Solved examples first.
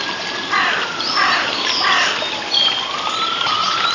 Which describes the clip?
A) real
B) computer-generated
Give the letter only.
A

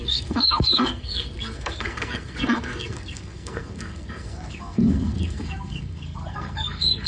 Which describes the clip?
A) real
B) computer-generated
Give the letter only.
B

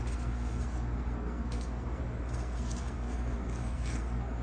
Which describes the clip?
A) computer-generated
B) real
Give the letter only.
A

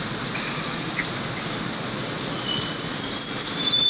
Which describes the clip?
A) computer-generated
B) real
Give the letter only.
B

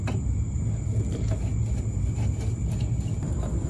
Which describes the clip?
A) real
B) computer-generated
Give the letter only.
A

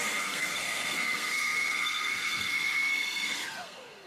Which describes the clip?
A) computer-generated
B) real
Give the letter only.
A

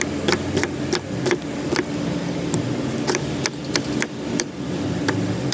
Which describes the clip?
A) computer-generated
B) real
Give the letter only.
A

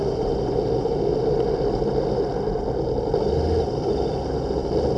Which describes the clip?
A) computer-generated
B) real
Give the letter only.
B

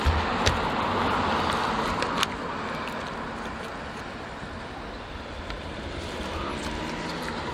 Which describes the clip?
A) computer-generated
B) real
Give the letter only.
B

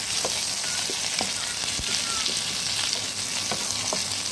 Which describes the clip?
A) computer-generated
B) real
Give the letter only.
B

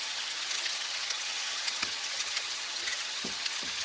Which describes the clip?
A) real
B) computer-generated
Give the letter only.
B